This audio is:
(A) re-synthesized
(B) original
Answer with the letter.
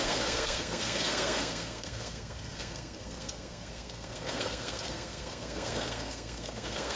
A